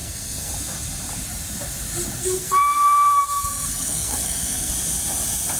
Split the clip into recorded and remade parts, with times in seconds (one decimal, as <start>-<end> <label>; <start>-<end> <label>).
0.0-0.5 remade; 0.5-2.2 recorded; 2.2-4.7 remade; 4.7-5.6 recorded